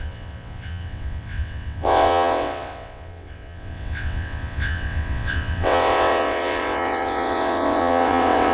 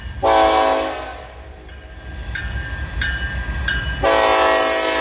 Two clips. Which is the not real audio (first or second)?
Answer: first